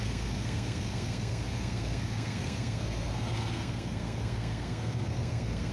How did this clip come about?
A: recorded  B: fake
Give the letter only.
B